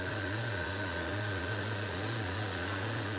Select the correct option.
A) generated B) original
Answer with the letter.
A